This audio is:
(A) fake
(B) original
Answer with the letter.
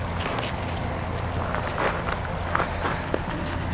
B